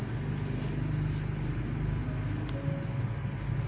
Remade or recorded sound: recorded